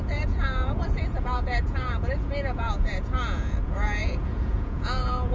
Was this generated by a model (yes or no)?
yes